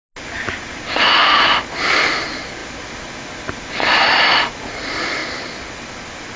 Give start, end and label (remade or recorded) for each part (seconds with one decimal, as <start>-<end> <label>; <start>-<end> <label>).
0.0-6.4 recorded